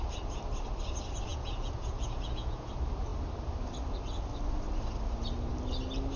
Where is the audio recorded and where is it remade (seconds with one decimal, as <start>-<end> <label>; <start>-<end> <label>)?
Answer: 0.0-1.3 recorded; 1.3-2.7 remade; 2.7-6.2 recorded